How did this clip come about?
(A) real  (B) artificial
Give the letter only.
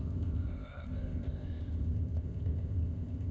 B